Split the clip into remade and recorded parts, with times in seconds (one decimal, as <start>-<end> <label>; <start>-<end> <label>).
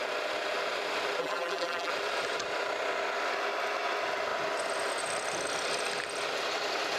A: 0.0-1.2 recorded; 1.2-1.9 remade; 1.9-7.0 recorded